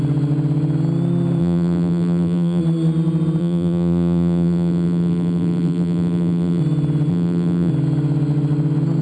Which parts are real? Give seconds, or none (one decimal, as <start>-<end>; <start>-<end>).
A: 0.0-1.4; 2.6-3.4; 6.6-7.1; 7.7-9.0

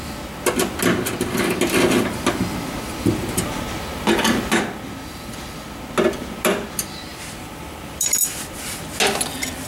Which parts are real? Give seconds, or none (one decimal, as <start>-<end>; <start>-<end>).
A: 0.0-7.1; 8.7-9.7